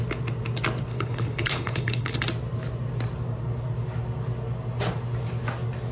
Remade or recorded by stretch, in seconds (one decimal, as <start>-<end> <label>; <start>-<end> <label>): 0.0-0.9 recorded; 0.9-2.2 remade; 2.2-5.9 recorded